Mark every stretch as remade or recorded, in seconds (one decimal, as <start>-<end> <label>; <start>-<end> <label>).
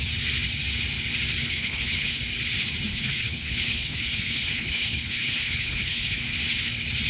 0.0-1.4 recorded; 1.4-2.2 remade; 2.2-2.9 recorded; 2.9-6.2 remade; 6.2-7.1 recorded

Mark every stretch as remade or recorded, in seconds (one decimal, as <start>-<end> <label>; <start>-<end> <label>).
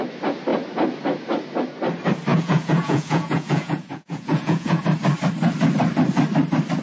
0.0-2.3 recorded; 2.3-4.8 remade; 4.8-6.8 recorded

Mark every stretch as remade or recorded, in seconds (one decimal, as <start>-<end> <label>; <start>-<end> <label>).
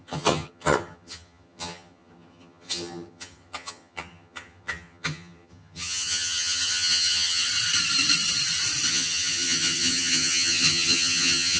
0.0-7.5 remade; 7.5-8.9 recorded; 8.9-11.6 remade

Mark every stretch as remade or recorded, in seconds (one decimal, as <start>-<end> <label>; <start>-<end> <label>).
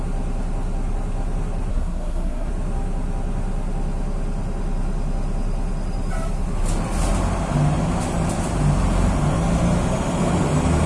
0.0-1.7 recorded; 1.7-2.5 remade; 2.5-10.9 recorded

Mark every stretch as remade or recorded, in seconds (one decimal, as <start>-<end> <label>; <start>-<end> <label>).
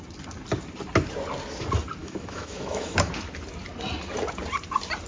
0.0-2.0 recorded; 2.0-3.1 remade; 3.1-5.1 recorded